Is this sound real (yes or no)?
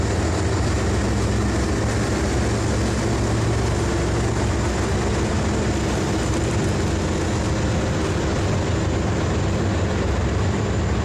yes